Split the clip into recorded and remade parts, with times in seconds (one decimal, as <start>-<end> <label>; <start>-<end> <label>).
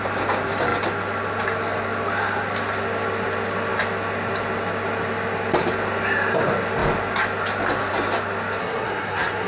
0.0-8.6 recorded; 8.6-9.5 remade